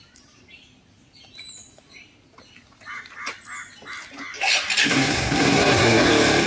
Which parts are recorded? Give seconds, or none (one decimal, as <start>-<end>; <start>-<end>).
0.0-4.8; 6.1-6.5